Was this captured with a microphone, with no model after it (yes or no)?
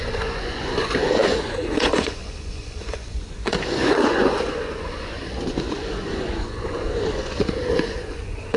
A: no